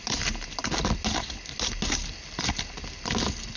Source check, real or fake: real